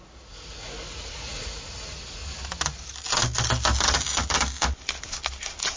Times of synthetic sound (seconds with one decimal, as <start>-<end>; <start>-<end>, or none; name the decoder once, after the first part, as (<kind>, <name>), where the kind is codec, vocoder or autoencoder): 0.0-2.2 (vocoder, Vocos)

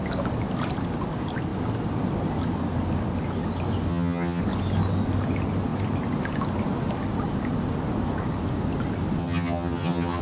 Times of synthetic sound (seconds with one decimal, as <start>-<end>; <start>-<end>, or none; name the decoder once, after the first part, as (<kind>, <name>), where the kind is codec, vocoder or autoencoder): 3.9-4.4 (vocoder, HiFi-GAN); 9.2-10.2